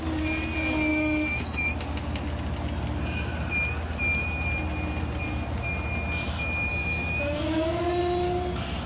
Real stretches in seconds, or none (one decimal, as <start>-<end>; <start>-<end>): 0.0-0.9; 1.7-6.7; 7.8-8.9